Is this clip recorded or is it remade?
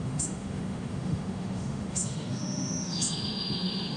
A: remade